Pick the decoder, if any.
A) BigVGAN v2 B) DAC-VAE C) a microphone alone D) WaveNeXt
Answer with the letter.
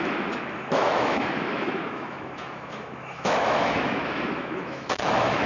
B